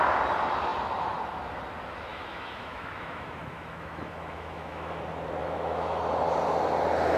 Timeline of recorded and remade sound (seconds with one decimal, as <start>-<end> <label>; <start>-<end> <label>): 0.0-2.1 recorded; 2.1-5.0 remade; 5.0-5.4 recorded; 5.4-6.0 remade; 6.0-7.2 recorded